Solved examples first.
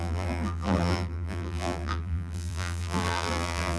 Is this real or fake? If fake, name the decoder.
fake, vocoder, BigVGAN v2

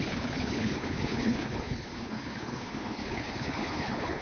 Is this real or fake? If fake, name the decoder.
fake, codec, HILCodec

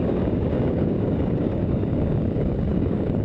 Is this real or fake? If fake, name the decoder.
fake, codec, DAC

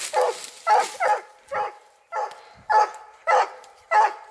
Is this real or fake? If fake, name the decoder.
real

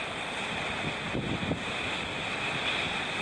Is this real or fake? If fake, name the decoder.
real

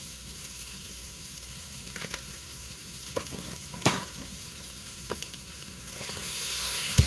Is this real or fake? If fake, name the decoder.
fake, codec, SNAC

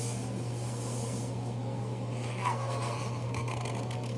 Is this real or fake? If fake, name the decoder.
fake, codec, SNAC